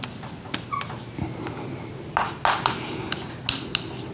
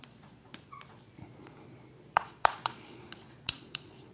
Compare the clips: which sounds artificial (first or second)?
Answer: second